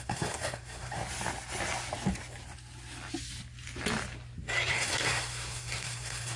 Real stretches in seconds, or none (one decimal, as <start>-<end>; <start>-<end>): 1.0-4.7